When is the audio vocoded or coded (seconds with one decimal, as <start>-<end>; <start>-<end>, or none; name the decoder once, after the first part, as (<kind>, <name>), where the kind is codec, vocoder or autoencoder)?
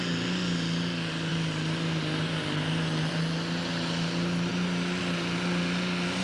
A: none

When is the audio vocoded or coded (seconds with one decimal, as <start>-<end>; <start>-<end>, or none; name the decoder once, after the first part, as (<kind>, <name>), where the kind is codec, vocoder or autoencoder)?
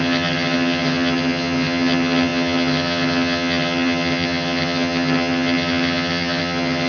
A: 0.0-6.9 (vocoder, HiFi-GAN)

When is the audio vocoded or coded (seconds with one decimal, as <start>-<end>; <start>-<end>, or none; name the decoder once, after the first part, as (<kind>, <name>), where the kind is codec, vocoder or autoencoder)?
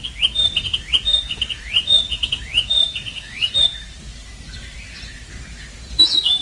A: 2.8-5.4 (vocoder, BigVGAN v2)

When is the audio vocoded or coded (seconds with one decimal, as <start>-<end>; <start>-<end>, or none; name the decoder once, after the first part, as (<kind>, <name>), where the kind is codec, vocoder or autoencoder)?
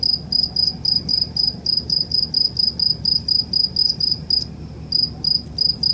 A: 1.1-2.3 (vocoder, BigVGAN v2); 3.8-4.3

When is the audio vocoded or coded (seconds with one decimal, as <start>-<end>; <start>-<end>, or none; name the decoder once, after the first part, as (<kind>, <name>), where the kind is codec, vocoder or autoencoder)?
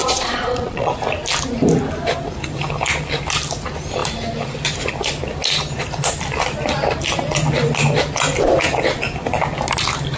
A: 0.0-0.9 (vocoder, Vocos)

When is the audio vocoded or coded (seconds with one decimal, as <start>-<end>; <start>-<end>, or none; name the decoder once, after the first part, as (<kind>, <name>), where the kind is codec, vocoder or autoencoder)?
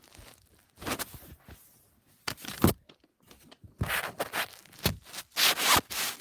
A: none